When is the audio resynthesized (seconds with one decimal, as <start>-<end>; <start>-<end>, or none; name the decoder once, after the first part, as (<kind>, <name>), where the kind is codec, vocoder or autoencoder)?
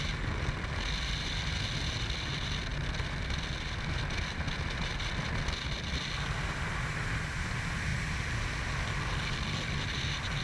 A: none